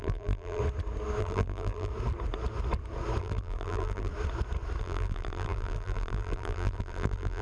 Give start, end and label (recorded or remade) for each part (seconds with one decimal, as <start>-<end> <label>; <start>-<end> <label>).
0.0-0.6 remade; 0.6-1.2 recorded; 1.2-1.9 remade; 1.9-3.2 recorded; 3.2-4.1 remade; 4.1-4.8 recorded; 4.8-7.4 remade